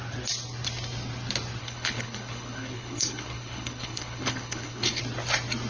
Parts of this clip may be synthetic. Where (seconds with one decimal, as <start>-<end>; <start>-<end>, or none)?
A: 1.6-5.0